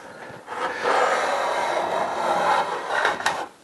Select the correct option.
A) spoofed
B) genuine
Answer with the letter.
B